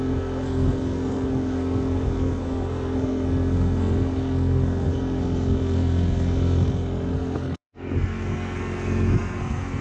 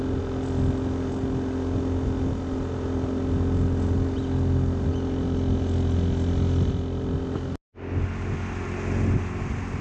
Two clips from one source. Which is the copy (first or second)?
first